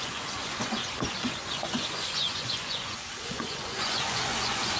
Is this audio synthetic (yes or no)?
yes